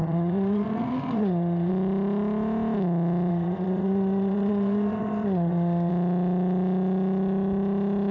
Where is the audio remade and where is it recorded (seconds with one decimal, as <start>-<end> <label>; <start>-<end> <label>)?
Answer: 0.0-1.7 remade; 1.7-3.3 recorded; 3.3-5.9 remade; 5.9-8.1 recorded